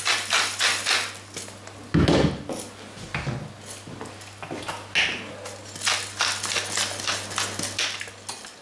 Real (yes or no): yes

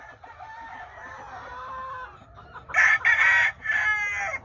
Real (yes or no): yes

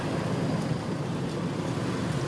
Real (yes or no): yes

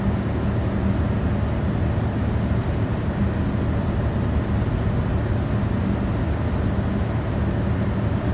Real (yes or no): yes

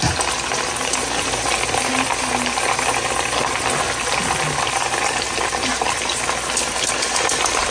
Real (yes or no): yes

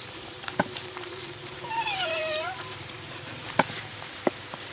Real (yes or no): no